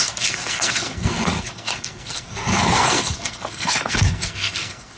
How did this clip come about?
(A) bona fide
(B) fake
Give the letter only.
B